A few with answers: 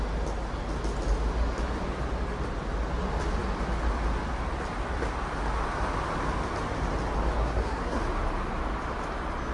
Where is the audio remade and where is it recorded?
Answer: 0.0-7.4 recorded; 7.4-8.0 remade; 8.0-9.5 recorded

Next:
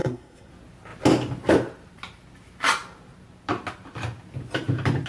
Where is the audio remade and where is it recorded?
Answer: 0.0-0.5 remade; 0.5-5.1 recorded

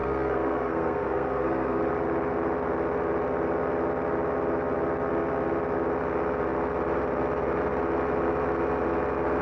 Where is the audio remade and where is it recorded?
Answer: 0.0-1.8 remade; 1.8-9.4 recorded

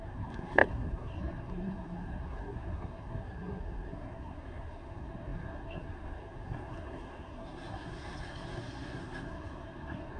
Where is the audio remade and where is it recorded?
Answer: 0.0-10.2 remade

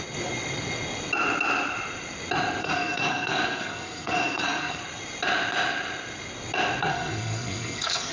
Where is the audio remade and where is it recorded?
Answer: 0.0-2.6 recorded; 2.6-4.8 remade; 4.8-6.9 recorded; 6.9-8.1 remade

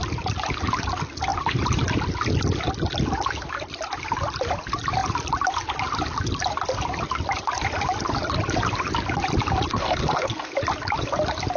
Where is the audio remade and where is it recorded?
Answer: 0.0-9.7 recorded; 9.7-10.5 remade; 10.5-11.6 recorded